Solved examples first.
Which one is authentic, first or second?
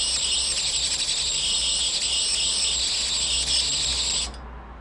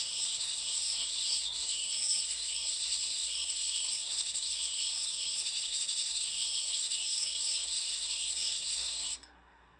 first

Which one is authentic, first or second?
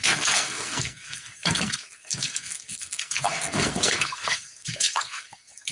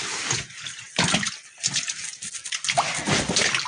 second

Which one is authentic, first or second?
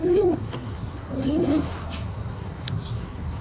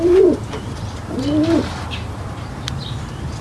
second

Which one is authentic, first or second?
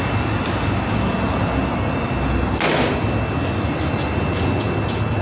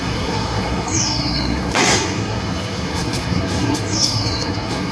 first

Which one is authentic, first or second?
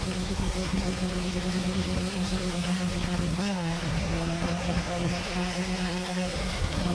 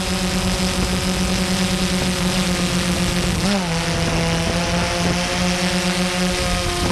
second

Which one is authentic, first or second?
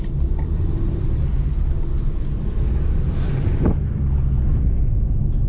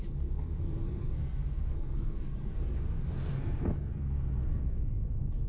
first